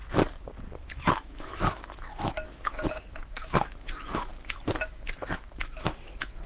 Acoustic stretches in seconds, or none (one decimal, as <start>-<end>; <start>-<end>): 0.0-1.1; 4.3-4.9